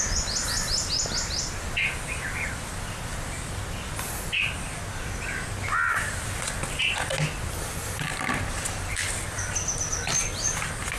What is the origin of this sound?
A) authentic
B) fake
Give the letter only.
A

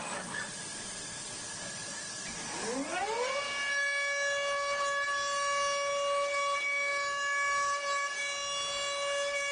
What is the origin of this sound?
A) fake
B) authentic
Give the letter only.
B